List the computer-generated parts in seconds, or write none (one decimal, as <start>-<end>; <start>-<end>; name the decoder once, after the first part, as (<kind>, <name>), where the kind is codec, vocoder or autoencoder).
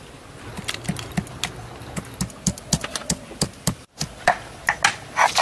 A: 3.0-4.6 (vocoder, BigVGAN v2)